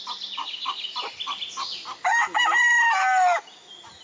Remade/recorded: recorded